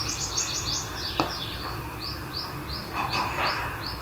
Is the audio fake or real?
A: real